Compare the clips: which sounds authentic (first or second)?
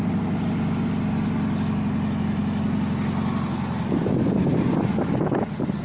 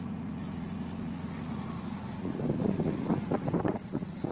first